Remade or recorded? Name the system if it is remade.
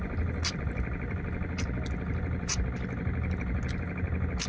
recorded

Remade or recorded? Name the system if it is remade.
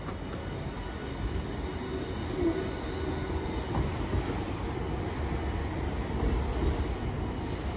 recorded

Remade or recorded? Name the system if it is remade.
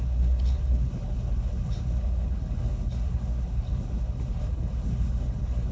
remade, codec, HILCodec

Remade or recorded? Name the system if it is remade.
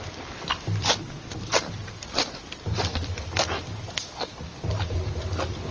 remade, vocoder, BigVGAN v2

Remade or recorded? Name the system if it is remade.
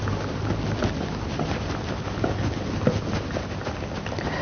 recorded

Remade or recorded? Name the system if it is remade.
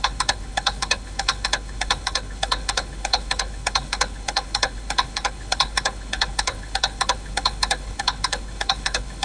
remade, codec, HILCodec